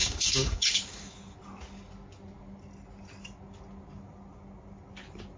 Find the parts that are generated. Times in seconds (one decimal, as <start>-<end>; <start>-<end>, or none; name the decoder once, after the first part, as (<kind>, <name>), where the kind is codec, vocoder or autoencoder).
0.0-1.1 (codec, DAC)